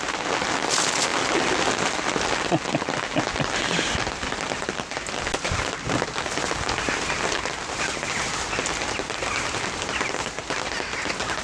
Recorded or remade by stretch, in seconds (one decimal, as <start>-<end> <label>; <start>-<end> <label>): 0.0-11.4 recorded